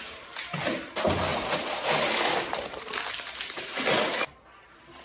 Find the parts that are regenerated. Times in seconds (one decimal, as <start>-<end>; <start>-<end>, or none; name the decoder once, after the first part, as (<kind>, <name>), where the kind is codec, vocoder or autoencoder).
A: 1.3-1.9 (vocoder, Vocos)